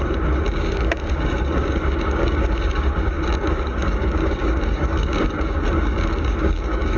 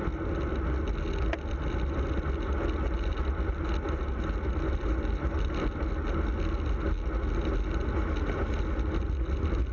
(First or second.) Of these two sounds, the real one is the second